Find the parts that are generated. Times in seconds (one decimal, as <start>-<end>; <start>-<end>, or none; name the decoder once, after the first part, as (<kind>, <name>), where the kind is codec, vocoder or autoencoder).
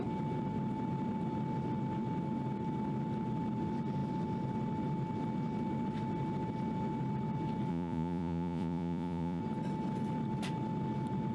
7.7-9.4 (vocoder, Vocos)